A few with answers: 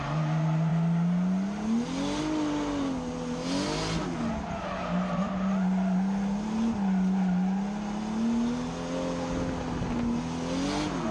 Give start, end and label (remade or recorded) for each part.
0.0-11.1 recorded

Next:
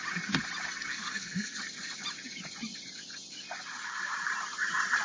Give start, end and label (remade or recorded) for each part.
0.0-0.9 recorded; 0.9-1.6 remade; 1.6-5.0 recorded